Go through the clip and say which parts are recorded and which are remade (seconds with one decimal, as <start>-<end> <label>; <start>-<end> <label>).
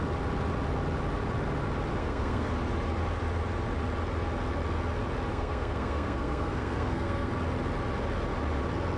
0.0-2.0 recorded; 2.0-2.5 remade; 2.5-5.3 recorded; 5.3-7.3 remade; 7.3-9.0 recorded